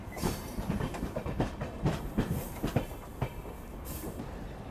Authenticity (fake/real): fake